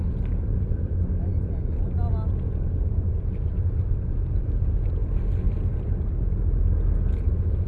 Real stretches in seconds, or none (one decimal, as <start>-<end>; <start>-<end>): 0.0-7.7